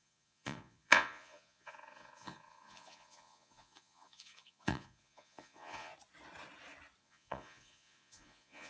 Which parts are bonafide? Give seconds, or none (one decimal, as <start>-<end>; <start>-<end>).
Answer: 5.9-7.0